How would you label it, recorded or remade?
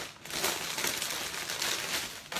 recorded